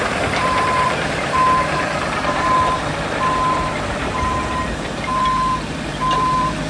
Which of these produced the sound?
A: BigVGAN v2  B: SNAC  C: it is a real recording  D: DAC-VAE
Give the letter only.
A